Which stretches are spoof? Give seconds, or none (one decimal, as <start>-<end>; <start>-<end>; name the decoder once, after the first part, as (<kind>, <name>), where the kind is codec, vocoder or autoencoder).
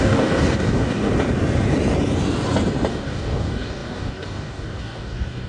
0.0-1.1 (codec, DAC); 2.9-5.5